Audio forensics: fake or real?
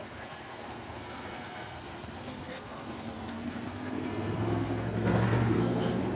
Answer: fake